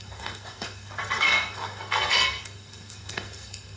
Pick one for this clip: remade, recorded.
remade